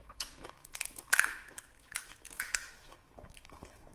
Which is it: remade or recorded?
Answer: remade